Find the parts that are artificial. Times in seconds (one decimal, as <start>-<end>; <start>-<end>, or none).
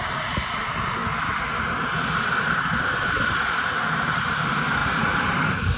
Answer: 0.0-1.0; 2.8-5.8